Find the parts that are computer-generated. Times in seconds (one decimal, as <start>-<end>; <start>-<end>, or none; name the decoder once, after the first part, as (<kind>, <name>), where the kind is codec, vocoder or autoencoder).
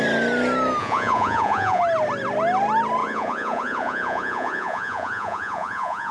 0.8-1.8 (vocoder, Vocos); 3.0-6.1